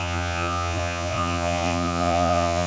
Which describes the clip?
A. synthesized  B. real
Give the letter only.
A